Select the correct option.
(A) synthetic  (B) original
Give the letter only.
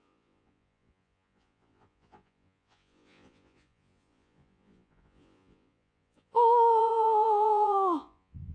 A